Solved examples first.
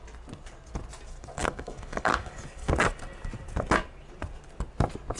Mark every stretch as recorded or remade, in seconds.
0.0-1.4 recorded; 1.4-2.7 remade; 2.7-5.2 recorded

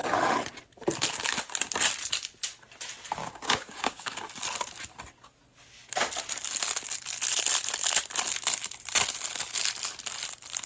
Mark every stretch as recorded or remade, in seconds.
0.0-3.2 recorded; 3.2-4.2 remade; 4.2-10.7 recorded

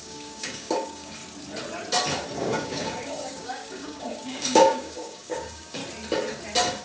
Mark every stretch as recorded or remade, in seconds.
0.0-1.2 remade; 1.2-2.4 recorded; 2.4-5.8 remade; 5.8-6.8 recorded

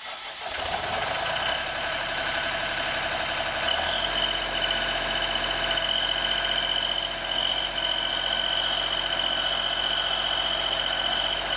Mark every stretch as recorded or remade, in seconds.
0.0-11.6 recorded